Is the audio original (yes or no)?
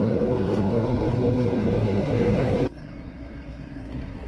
no